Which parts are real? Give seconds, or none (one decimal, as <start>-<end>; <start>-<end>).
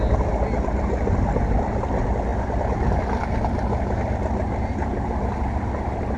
0.0-6.2